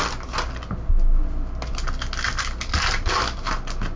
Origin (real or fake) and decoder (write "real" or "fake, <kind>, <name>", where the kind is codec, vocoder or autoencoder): real